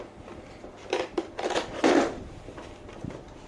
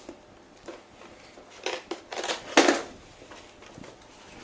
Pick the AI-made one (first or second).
first